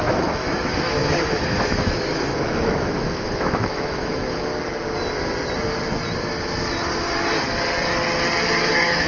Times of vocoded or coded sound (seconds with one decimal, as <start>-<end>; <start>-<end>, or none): 0.0-4.5; 8.7-9.1